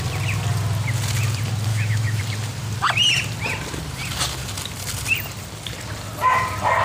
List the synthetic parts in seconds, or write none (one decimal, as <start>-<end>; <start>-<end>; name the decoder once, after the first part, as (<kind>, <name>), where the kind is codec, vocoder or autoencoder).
1.7-2.2 (autoencoder, DAC-VAE)